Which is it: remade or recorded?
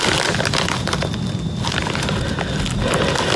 recorded